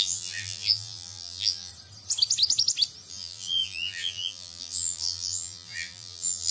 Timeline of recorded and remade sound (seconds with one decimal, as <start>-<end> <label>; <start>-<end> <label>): 0.0-1.7 remade; 1.7-3.1 recorded; 3.1-6.5 remade